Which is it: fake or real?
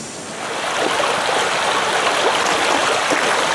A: real